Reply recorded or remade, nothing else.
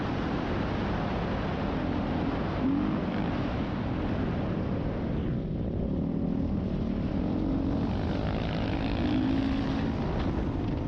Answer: recorded